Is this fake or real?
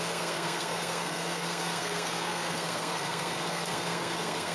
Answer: fake